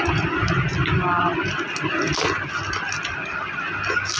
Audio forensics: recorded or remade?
recorded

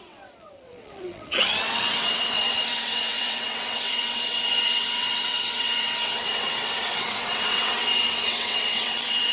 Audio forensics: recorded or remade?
remade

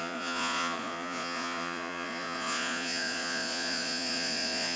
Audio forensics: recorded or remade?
remade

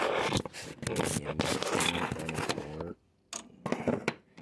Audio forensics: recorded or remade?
recorded